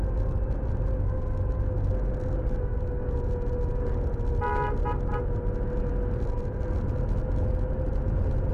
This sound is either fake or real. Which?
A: real